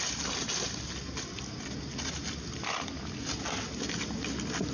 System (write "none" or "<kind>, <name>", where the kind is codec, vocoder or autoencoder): none